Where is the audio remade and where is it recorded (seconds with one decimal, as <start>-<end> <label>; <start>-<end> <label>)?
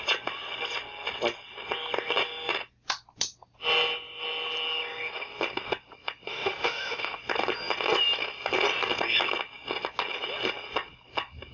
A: 0.0-6.3 recorded; 6.3-7.2 remade; 7.2-11.5 recorded